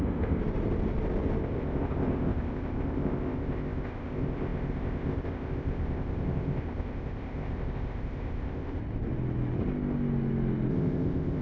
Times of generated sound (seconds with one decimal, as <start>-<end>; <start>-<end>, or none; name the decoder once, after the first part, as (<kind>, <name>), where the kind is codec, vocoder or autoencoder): 0.0-0.4 (codec, ZipCodec); 1.4-8.8; 10.7-11.4